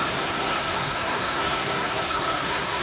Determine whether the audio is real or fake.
fake